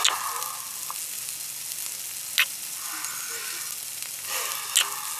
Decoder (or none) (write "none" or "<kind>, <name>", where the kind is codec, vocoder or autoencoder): none